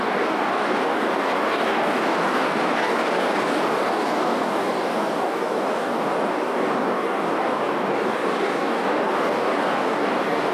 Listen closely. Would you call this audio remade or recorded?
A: remade